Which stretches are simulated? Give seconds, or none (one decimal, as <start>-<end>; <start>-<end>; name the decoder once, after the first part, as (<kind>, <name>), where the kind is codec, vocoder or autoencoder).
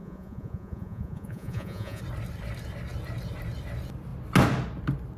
0.0-2.0 (vocoder, Vocos)